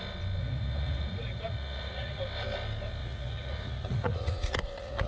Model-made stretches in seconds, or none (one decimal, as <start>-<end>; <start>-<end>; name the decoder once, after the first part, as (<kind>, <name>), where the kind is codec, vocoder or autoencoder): 0.4-2.2 (vocoder, Vocos); 3.0-5.1